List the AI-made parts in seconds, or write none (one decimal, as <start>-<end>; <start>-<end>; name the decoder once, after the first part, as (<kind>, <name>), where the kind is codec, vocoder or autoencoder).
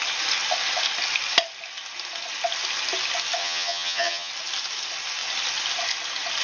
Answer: 3.4-4.3 (vocoder, HiFi-GAN)